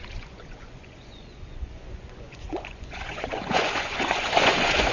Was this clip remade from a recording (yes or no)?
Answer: yes